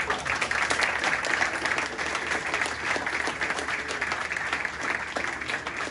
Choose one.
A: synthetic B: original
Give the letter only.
B